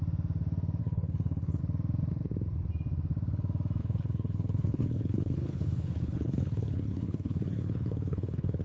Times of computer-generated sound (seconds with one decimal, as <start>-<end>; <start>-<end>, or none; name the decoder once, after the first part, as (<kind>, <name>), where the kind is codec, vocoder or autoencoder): 0.8-1.6 (codec, HILCodec); 3.8-8.6